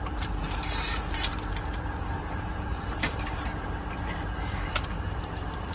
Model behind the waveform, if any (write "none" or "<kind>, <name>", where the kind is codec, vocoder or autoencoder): vocoder, BigVGAN v2